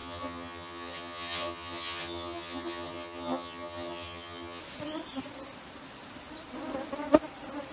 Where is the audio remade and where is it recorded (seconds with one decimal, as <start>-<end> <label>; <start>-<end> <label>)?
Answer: 0.0-4.6 remade; 4.6-7.7 recorded